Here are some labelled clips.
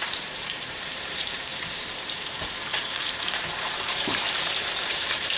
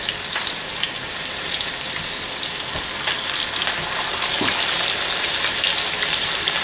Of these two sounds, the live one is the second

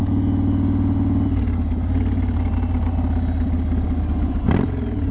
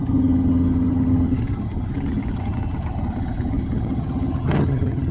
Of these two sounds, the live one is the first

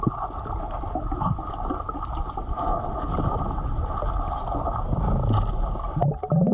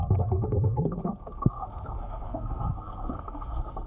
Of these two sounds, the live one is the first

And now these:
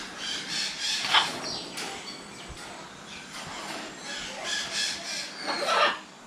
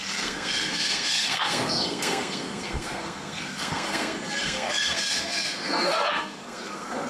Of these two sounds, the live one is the first